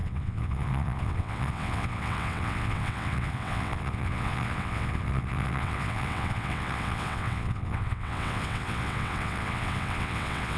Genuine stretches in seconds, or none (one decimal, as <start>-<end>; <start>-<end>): none